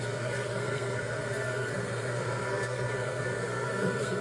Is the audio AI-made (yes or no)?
yes